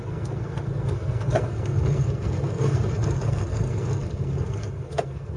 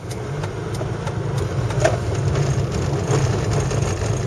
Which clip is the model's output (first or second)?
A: first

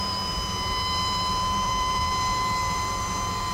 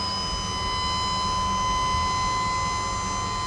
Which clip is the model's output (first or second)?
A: first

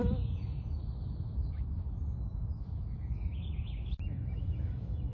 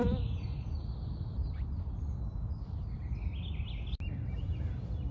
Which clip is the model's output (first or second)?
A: first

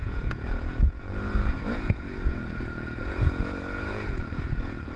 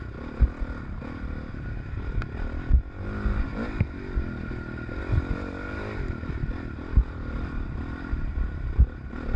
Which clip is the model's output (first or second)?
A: first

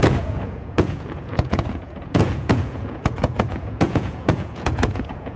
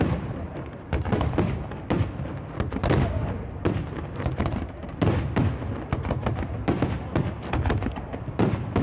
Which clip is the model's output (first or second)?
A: first